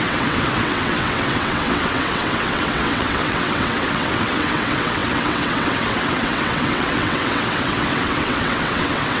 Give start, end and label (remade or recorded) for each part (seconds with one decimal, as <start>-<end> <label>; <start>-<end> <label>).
0.0-9.2 remade